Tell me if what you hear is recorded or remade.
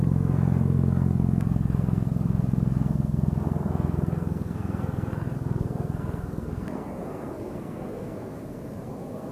remade